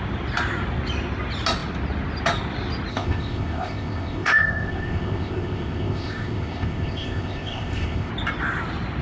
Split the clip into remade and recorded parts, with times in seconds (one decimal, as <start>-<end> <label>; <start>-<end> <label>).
0.0-2.9 recorded; 2.9-8.1 remade; 8.1-9.0 recorded